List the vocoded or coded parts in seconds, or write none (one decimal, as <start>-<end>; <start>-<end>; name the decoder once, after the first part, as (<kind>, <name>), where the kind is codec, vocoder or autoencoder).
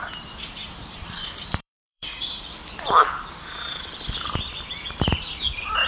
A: 0.6-2.4 (vocoder, BigVGAN v2)